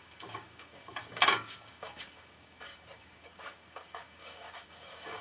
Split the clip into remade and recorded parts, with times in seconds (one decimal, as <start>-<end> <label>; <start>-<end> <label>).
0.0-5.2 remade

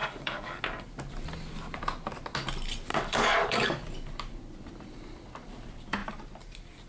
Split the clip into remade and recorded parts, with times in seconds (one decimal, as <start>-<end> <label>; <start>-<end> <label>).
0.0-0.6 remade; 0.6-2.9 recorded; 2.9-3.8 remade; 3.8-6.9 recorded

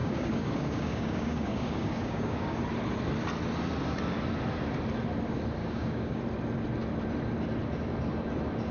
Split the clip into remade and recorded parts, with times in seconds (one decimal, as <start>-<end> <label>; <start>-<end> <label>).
0.0-2.6 remade; 2.6-5.6 recorded; 5.6-6.2 remade; 6.2-8.7 recorded

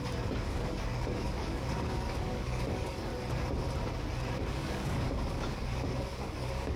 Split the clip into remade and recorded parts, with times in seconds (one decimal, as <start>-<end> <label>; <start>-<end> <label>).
0.0-3.1 remade; 3.1-4.5 recorded; 4.5-6.8 remade

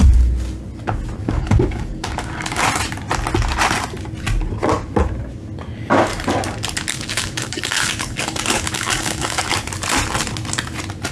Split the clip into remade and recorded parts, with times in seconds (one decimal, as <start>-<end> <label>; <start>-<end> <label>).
0.0-1.2 recorded; 1.2-2.6 remade; 2.6-6.9 recorded; 6.9-9.5 remade; 9.5-11.1 recorded

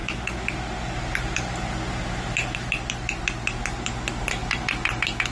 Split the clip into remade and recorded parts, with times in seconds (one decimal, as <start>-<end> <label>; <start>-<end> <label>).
0.0-5.3 recorded

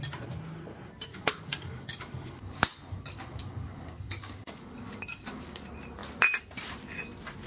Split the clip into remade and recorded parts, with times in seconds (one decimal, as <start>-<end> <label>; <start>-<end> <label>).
0.0-1.1 recorded; 1.1-5.6 remade; 5.6-7.5 recorded